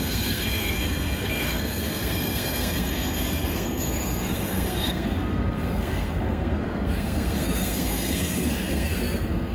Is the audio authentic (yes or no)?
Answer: no